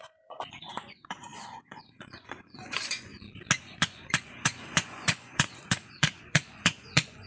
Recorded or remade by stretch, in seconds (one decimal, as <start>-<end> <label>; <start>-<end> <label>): 0.0-3.1 remade; 3.1-3.6 recorded; 3.6-7.3 remade